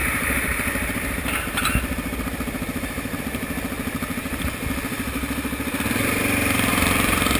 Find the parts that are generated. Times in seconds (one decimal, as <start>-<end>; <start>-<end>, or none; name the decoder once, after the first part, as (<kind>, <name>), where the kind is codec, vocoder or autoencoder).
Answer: 0.0-3.2 (vocoder, BigVGAN v2); 6.7-7.4